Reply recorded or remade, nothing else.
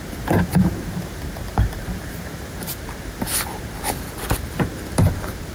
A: remade